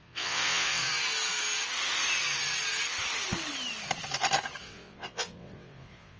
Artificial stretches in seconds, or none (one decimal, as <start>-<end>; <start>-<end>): 0.0-0.9; 4.6-6.2